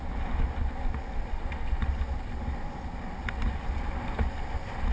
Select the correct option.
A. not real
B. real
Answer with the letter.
B